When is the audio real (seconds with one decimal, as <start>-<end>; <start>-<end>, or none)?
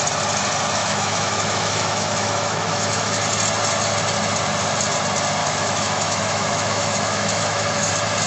0.0-0.8; 3.2-5.4; 7.9-8.3